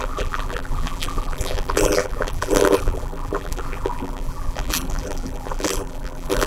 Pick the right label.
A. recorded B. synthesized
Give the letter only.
B